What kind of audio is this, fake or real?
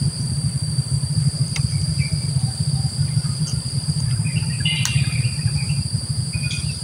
fake